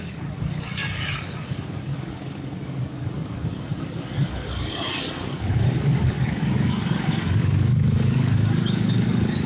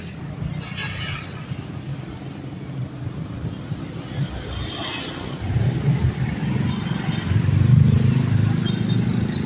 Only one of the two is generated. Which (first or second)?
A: first